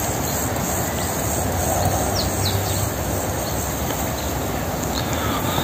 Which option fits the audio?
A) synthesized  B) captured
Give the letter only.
B